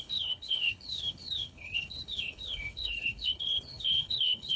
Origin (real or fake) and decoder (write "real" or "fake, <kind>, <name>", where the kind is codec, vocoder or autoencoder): fake, codec, HILCodec